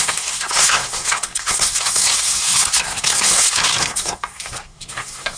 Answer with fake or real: fake